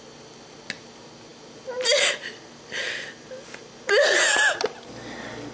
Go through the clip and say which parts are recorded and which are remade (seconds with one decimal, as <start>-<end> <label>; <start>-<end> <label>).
0.0-5.5 recorded